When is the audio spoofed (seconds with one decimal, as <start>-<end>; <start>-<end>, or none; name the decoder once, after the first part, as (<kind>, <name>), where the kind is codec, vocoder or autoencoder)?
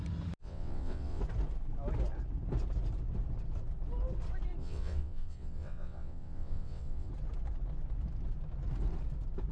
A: 0.4-1.2 (vocoder, WaveNeXt); 4.6-7.1